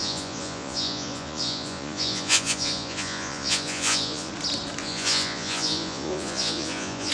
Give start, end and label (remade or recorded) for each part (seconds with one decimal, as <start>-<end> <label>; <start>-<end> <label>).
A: 0.0-4.3 remade; 4.3-4.8 recorded; 4.8-7.1 remade